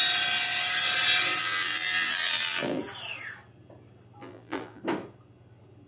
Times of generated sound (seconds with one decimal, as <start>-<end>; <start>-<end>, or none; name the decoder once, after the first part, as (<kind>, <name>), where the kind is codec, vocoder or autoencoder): 1.4-2.8 (vocoder, BigVGAN v2); 4.2-4.8